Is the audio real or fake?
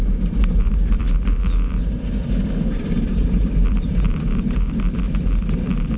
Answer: fake